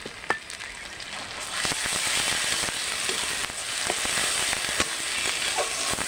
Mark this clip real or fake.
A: real